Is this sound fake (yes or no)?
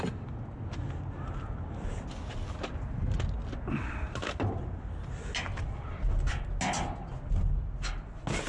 no